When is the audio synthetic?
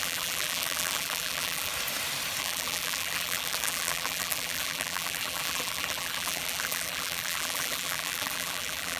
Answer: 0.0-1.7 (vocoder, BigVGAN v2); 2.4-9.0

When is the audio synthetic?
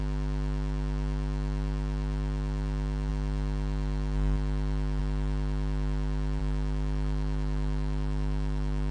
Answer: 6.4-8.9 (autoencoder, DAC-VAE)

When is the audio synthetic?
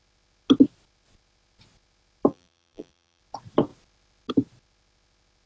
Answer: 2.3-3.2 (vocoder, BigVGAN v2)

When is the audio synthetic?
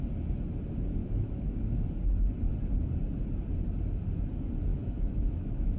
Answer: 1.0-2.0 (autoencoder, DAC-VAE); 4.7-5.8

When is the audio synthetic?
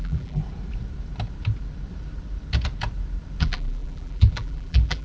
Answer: 0.0-0.4 (vocoder, BigVGAN v2); 3.4-5.0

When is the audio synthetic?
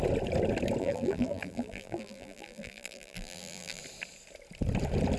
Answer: 0.8-3.8 (vocoder, BigVGAN v2)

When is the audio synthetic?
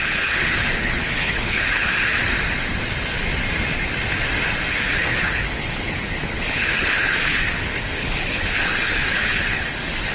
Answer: 0.0-1.9 (codec, HILCodec); 4.7-10.1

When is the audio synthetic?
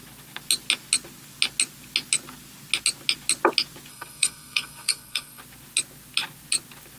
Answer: 3.9-5.4 (codec, SNAC)